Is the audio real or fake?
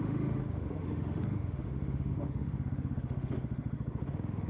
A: fake